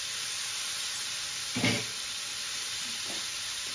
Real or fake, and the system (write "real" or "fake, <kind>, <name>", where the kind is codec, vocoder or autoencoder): real